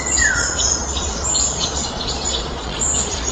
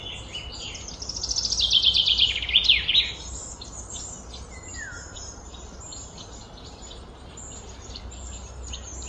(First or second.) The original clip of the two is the second